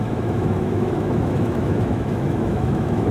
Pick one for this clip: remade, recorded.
remade